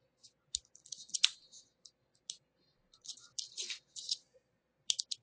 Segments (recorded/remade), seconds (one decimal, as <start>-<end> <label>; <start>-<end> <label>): 0.0-5.2 recorded